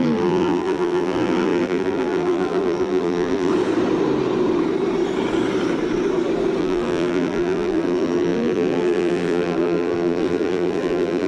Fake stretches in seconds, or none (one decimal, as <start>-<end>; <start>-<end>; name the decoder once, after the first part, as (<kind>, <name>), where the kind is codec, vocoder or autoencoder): 0.0-3.5 (vocoder, BigVGAN v2); 6.6-11.3